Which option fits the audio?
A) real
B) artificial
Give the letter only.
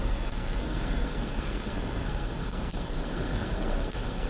B